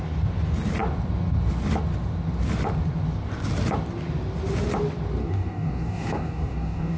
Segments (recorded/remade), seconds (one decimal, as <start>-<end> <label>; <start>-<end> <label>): 0.0-5.2 recorded; 5.2-7.0 remade